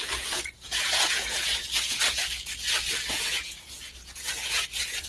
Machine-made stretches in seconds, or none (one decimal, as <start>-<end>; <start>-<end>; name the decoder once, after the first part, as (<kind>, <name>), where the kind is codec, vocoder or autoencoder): 0.0-2.2 (vocoder, Vocos); 3.1-5.1